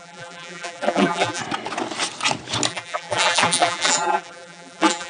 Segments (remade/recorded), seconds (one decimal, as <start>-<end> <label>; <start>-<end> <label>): 0.0-1.4 remade; 1.4-2.7 recorded; 2.7-5.1 remade